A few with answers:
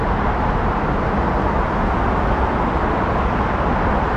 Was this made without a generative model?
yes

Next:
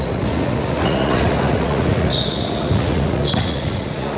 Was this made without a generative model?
no